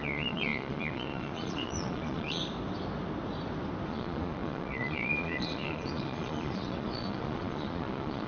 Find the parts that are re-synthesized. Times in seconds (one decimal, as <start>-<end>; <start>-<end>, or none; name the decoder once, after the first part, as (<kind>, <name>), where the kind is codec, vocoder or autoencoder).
0.0-2.4 (vocoder, Vocos); 3.9-8.3